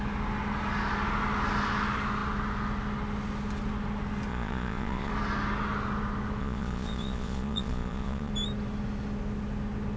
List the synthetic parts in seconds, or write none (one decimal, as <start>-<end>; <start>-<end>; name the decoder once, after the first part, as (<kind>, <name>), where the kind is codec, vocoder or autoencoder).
4.3-5.1 (vocoder, Vocos); 6.4-8.3